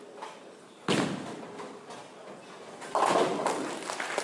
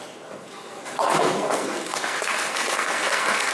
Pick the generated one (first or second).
second